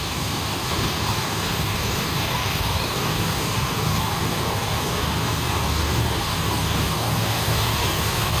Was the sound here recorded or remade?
remade